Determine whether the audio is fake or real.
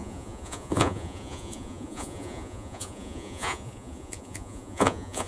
fake